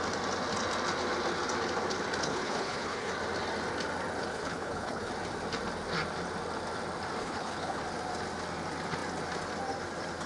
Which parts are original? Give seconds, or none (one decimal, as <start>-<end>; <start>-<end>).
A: 0.0-2.2; 3.1-4.3; 5.1-7.2; 7.8-10.3